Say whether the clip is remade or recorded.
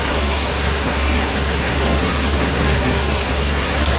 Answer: remade